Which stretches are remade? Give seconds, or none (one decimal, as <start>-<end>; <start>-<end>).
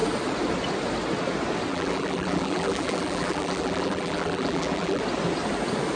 1.7-5.0